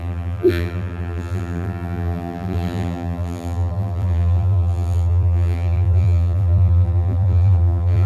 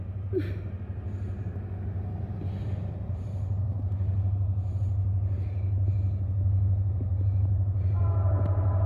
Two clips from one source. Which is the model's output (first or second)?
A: first